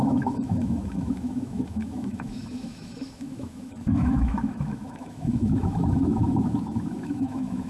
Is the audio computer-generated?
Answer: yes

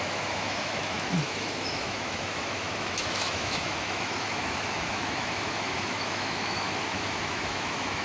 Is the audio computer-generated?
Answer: yes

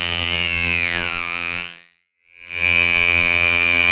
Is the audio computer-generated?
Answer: yes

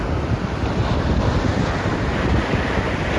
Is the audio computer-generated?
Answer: no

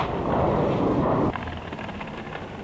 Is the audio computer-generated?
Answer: no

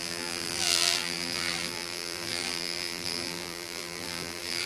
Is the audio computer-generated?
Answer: yes